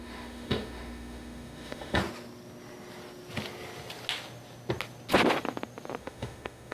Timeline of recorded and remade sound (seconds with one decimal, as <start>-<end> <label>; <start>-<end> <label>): 0.0-2.0 remade; 2.0-6.0 recorded; 6.0-6.7 remade